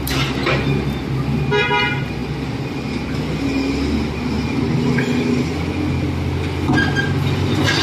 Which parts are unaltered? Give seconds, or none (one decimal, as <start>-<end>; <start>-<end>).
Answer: 0.0-7.8